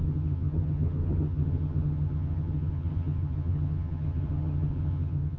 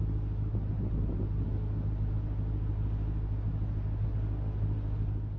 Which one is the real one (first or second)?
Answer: second